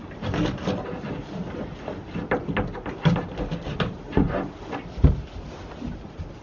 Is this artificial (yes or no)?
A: no